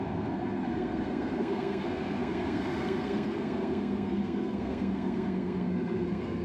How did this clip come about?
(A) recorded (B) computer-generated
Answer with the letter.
B